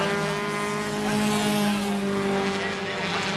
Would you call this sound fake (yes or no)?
no